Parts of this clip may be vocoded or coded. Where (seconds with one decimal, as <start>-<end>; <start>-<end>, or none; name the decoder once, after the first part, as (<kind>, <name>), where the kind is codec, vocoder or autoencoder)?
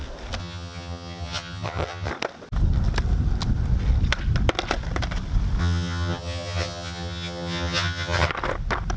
0.4-2.1 (vocoder, HiFi-GAN); 5.6-8.3